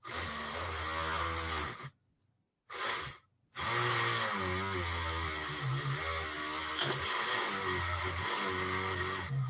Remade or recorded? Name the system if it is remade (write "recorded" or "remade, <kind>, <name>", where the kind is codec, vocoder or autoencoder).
recorded